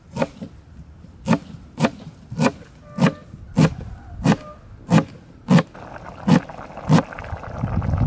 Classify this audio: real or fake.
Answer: real